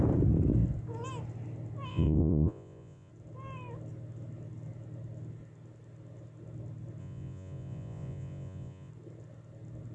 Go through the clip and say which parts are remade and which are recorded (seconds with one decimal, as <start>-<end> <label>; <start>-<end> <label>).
0.0-1.9 recorded; 1.9-3.1 remade; 3.1-7.0 recorded; 7.0-8.9 remade; 8.9-9.9 recorded